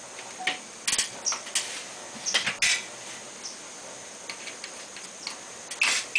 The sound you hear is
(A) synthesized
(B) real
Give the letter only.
B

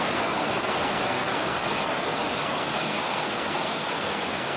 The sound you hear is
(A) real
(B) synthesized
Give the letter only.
B